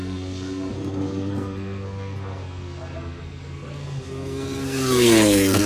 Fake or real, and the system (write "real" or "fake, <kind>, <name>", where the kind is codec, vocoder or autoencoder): fake, codec, SNAC